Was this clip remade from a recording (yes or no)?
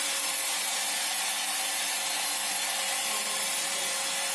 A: no